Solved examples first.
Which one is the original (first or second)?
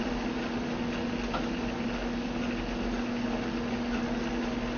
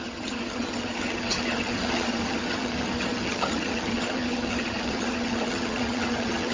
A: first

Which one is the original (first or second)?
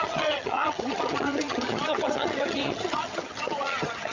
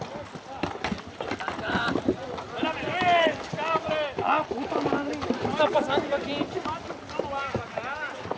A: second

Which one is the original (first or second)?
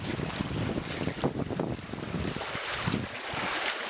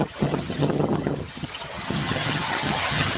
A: first